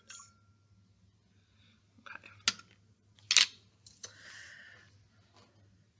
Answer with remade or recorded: recorded